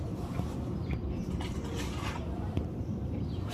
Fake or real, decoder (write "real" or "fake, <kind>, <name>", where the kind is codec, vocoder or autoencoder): fake, vocoder, BigVGAN v2